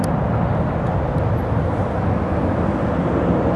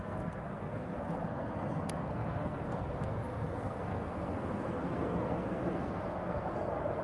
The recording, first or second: first